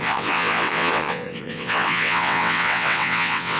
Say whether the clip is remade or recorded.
remade